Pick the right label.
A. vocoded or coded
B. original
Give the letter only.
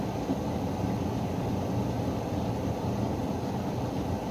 B